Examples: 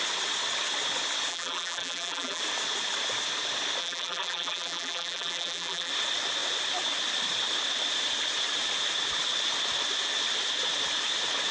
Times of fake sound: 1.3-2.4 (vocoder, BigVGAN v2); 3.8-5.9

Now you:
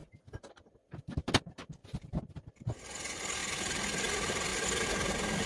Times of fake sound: none

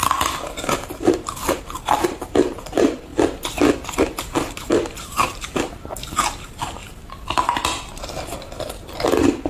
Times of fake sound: 0.5-3.1 (vocoder, BigVGAN v2); 4.0-6.8; 9.0-9.5

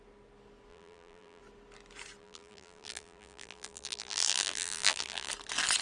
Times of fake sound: 0.7-1.4 (vocoder, BigVGAN v2); 2.2-5.3

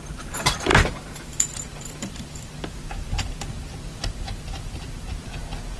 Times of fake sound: 0.0-0.7 (vocoder, BigVGAN v2); 1.2-5.8

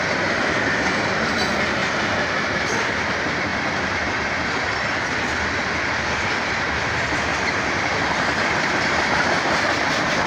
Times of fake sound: 1.8-2.7 (vocoder, BigVGAN v2); 7.3-7.9

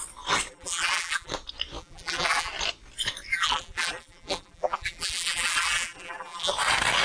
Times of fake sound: 0.5-1.3 (vocoder, BigVGAN v2); 1.8-2.5; 3.3-6.5